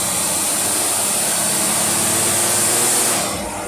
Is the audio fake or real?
real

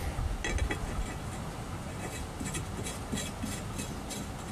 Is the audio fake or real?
real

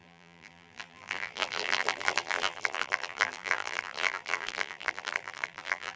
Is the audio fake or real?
fake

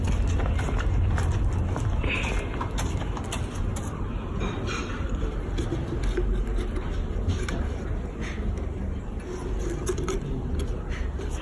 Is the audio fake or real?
real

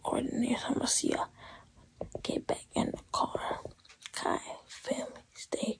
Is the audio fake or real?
real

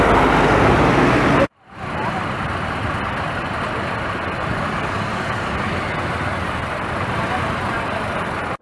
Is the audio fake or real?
real